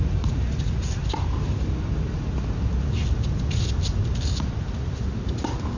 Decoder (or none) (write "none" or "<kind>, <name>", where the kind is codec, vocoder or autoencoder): none